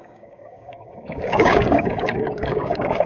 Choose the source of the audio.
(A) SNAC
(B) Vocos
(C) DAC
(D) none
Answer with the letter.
C